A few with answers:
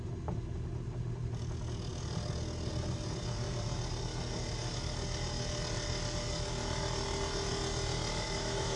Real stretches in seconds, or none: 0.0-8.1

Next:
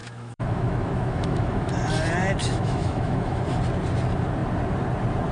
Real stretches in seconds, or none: 1.7-2.4; 3.4-5.3